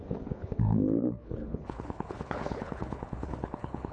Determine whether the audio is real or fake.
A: fake